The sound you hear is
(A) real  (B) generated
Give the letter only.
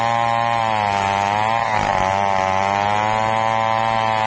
A